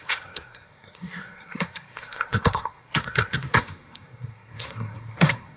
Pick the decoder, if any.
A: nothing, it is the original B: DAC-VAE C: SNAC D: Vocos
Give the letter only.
C